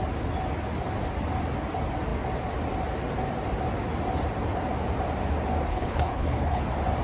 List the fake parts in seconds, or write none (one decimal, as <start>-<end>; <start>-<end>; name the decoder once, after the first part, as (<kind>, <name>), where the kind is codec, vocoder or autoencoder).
5.7-6.6 (codec, HILCodec)